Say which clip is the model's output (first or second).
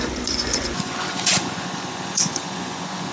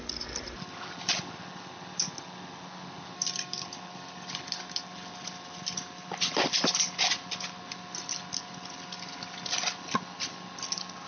first